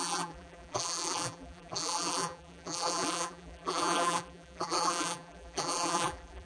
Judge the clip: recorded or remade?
remade